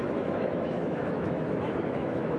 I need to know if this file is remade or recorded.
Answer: remade